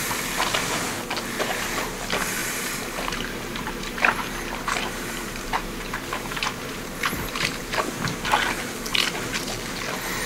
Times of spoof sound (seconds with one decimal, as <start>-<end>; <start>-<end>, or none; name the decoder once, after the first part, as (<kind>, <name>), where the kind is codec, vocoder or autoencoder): 2.4-7.6 (vocoder, BigVGAN v2)